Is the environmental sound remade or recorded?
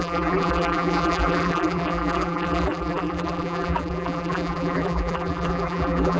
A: remade